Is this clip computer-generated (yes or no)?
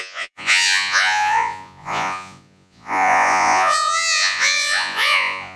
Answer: yes